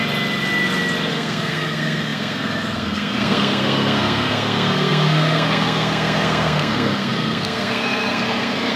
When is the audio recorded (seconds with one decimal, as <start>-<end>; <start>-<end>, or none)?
0.0-1.1